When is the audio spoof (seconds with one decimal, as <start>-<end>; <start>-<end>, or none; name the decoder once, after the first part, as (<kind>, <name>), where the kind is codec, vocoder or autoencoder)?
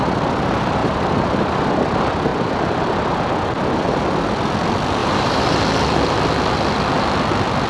0.8-1.7 (vocoder, BigVGAN v2); 2.3-2.9; 5.0-5.6